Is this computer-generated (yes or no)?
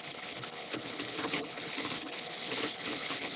yes